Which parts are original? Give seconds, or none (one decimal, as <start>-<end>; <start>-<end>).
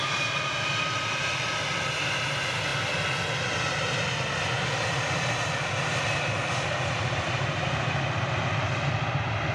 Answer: 0.0-9.5